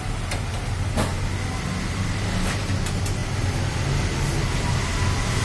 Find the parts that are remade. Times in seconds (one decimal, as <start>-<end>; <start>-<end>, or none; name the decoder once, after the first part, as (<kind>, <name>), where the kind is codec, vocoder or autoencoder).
none